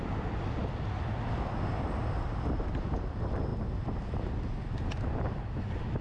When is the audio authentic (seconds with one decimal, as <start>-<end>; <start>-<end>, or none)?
0.0-6.0